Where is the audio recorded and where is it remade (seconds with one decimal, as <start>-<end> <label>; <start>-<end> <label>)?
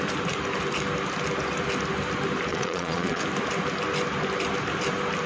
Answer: 0.0-2.5 recorded; 2.5-3.2 remade; 3.2-5.3 recorded